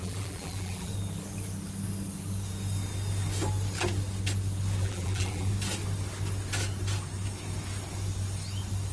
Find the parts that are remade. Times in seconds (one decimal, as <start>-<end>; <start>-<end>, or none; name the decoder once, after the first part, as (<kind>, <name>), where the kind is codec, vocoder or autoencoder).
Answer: 0.0-0.9 (vocoder, BigVGAN v2); 4.8-5.5